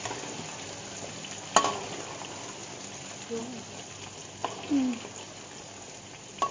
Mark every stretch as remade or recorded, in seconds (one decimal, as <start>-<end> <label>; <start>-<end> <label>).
0.0-2.6 recorded; 2.6-3.4 remade; 3.4-6.5 recorded